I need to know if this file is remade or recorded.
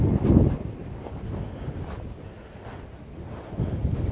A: recorded